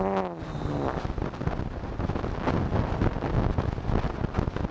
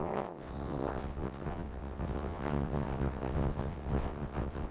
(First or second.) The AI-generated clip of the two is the second